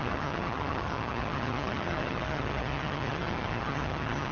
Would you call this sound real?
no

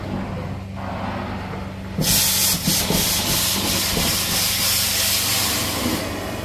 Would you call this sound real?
yes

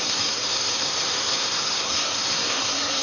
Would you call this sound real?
no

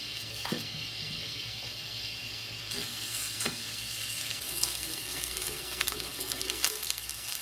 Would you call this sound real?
no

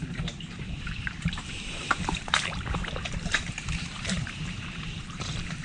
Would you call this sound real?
no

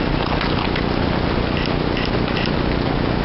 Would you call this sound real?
yes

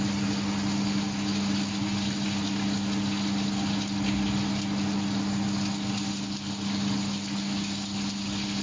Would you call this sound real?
yes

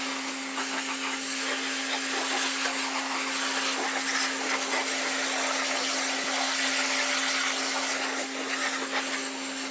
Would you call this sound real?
yes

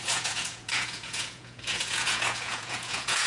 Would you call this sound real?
no